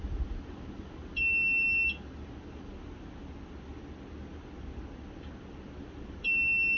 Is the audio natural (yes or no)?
yes